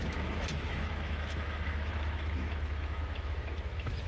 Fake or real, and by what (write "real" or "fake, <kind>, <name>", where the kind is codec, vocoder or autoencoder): fake, autoencoder, DAC-VAE